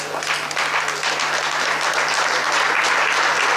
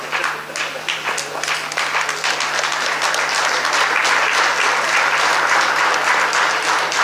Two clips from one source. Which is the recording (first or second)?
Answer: first